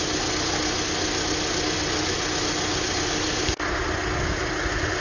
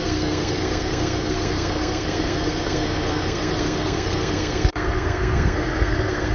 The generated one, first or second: second